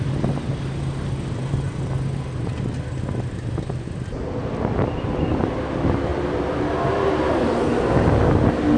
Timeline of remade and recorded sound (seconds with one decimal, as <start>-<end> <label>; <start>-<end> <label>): 0.0-8.8 recorded